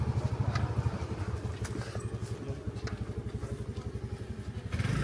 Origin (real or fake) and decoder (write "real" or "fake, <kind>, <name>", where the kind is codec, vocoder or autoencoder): real